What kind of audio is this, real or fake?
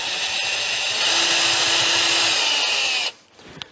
real